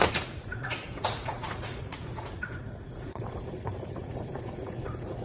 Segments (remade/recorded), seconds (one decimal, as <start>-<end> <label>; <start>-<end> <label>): 0.0-5.2 remade

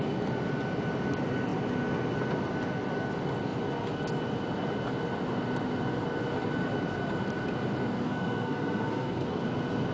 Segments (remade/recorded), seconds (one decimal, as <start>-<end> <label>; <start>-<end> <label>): 0.0-8.0 recorded; 8.0-9.4 remade; 9.4-9.9 recorded

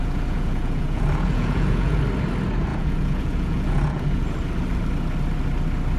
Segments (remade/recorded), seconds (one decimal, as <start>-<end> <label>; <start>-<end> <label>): 0.0-2.0 remade; 2.0-2.7 recorded; 2.7-4.2 remade; 4.2-6.0 recorded